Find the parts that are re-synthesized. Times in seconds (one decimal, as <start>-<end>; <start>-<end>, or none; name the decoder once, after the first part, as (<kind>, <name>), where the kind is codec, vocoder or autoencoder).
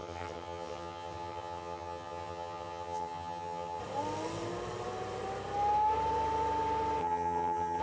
0.0-3.8 (vocoder, HiFi-GAN); 7.0-7.8